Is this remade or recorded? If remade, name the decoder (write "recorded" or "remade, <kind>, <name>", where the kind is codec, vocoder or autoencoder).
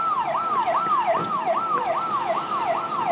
recorded